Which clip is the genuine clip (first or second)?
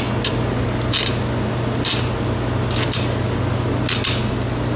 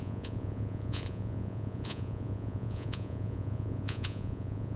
first